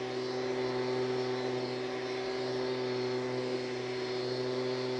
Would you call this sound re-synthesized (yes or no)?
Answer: no